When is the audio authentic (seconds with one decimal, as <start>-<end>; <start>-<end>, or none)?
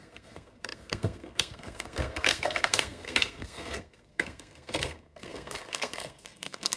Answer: none